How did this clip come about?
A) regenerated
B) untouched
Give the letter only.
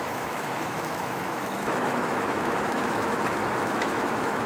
A